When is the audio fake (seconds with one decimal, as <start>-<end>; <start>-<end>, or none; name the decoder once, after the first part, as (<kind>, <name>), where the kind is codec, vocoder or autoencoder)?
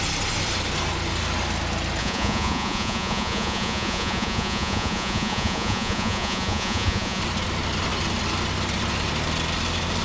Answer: 2.0-7.2 (vocoder, Vocos)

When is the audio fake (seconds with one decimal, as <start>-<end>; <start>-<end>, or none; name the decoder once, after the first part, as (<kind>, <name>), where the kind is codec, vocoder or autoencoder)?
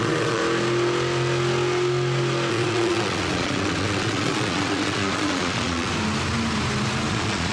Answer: 0.0-0.4 (vocoder, Vocos); 2.5-5.9; 7.1-7.5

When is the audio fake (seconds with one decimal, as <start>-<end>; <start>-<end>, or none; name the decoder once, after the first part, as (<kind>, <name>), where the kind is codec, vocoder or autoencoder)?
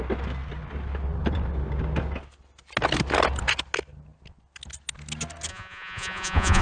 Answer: 5.5-6.6 (vocoder, Vocos)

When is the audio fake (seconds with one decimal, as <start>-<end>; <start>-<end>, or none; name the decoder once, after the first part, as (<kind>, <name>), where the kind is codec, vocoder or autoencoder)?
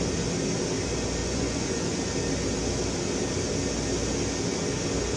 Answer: 1.2-2.0 (vocoder, Vocos)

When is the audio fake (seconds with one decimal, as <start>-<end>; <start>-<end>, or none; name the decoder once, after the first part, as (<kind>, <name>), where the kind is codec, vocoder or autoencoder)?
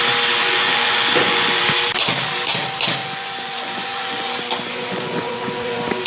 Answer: 0.4-1.6 (vocoder, Vocos); 3.0-4.3; 4.7-6.1